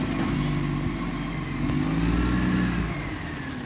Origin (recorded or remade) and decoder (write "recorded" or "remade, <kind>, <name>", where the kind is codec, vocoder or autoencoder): recorded